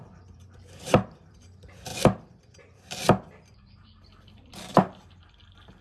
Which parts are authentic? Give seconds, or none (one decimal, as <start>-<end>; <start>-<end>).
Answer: none

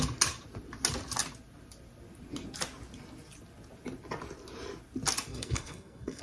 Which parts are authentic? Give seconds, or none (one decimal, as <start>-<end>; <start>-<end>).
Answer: 0.0-5.3

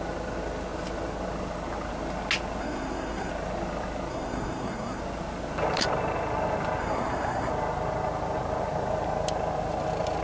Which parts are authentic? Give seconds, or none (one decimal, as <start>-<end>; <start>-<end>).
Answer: 0.0-2.6; 3.3-4.1; 5.0-6.8; 7.5-10.2

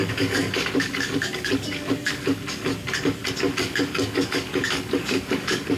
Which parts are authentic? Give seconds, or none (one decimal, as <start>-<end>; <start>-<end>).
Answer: 2.7-3.6